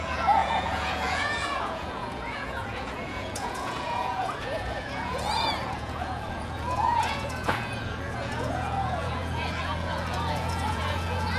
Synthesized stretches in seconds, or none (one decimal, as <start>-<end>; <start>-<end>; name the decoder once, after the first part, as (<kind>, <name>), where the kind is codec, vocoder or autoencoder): 0.0-11.4 (vocoder, Vocos)

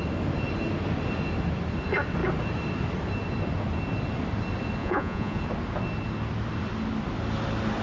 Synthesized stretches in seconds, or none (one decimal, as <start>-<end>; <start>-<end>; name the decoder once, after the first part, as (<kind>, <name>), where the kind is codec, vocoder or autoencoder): 4.8-5.4 (vocoder, Vocos)

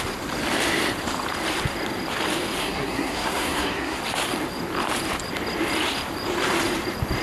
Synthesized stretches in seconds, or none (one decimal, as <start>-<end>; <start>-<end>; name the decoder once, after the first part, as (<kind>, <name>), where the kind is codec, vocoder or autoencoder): 2.6-4.0 (codec, SNAC)

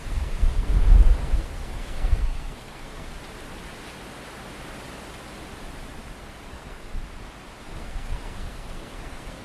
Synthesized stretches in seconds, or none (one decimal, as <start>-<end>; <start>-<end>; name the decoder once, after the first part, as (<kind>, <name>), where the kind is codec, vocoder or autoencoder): 0.0-3.1 (codec, SNAC); 6.2-6.9; 7.6-9.4

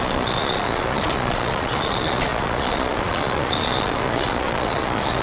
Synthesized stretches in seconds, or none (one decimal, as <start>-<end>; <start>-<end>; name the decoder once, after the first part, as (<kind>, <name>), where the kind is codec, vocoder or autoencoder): 0.0-5.2 (vocoder, Vocos)

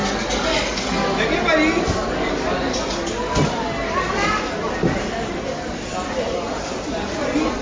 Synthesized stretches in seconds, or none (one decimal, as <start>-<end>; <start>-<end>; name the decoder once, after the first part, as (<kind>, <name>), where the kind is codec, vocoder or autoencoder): none

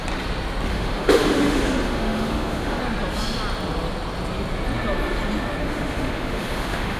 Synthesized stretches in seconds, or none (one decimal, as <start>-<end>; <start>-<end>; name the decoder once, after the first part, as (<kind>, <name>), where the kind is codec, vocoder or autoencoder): 0.7-2.8 (autoencoder, DAC-VAE); 5.6-7.0